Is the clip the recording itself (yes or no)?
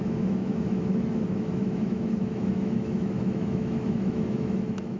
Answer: no